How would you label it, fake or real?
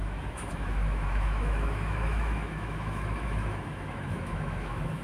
fake